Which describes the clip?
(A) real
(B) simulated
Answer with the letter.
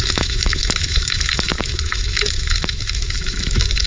B